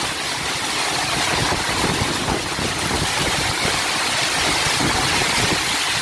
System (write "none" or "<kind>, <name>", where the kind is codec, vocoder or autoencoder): none